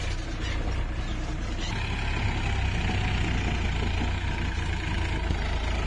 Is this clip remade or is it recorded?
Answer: recorded